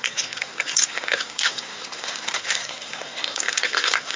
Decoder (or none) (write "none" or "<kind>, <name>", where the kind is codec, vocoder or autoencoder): codec, SNAC